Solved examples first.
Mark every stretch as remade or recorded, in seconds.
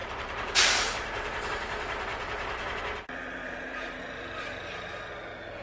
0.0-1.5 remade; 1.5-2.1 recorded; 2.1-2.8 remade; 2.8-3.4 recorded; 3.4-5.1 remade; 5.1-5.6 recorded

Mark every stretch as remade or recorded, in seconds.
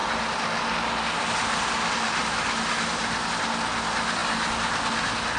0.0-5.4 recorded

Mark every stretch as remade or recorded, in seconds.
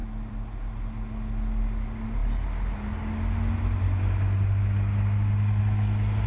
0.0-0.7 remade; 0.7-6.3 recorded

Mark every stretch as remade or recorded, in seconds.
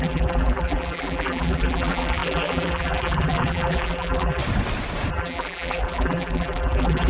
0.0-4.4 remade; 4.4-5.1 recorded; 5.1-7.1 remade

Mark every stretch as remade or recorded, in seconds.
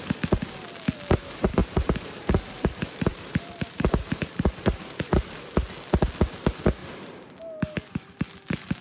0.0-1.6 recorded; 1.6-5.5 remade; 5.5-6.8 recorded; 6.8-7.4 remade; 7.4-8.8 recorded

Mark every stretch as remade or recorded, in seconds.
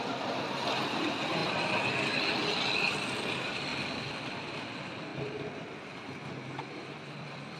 0.0-3.7 remade; 3.7-4.3 recorded; 4.3-5.1 remade; 5.1-6.6 recorded; 6.6-7.6 remade